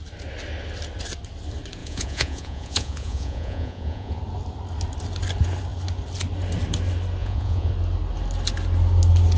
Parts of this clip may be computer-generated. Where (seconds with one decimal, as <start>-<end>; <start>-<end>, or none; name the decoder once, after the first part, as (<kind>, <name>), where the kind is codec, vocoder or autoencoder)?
1.8-4.2 (vocoder, Vocos); 7.2-7.7